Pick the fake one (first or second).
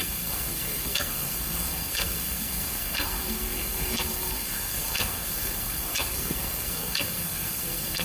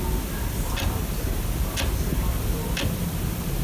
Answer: first